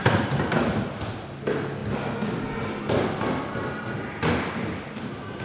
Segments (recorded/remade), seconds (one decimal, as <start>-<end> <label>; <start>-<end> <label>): 0.0-5.4 recorded